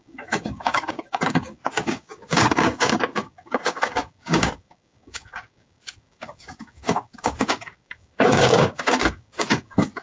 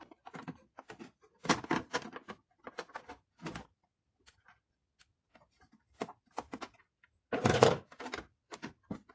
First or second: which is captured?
second